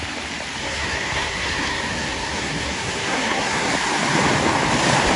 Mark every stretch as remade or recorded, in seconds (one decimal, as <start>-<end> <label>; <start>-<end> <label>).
0.0-0.6 recorded; 0.6-3.7 remade; 3.7-5.2 recorded

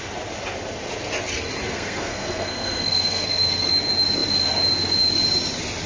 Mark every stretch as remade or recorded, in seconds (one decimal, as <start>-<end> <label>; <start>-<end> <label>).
0.0-1.7 recorded; 1.7-3.7 remade; 3.7-5.9 recorded